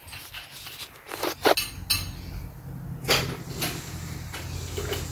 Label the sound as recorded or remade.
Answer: recorded